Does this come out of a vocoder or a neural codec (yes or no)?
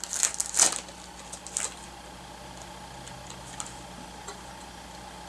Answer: no